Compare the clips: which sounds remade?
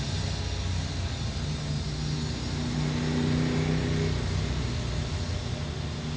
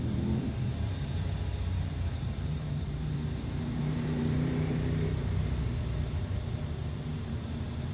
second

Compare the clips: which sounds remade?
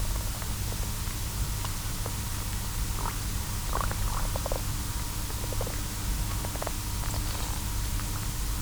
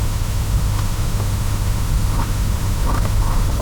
second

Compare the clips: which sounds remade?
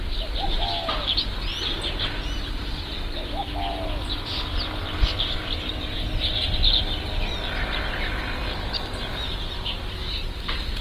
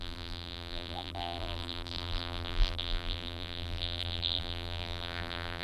second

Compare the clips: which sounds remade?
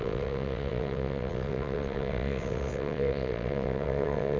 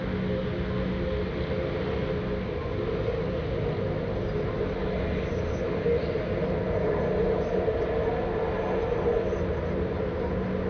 first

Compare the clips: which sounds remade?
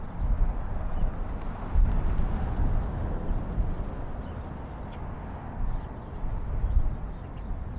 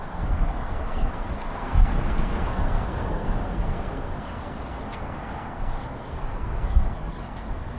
second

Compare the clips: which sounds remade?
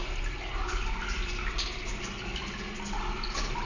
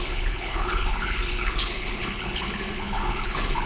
second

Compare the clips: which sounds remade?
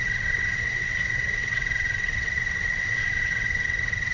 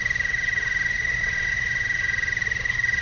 first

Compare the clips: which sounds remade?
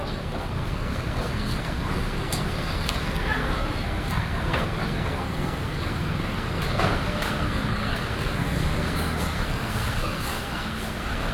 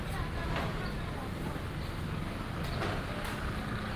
first